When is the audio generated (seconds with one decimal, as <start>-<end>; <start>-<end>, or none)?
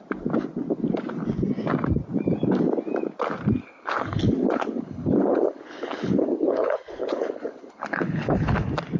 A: 3.6-8.5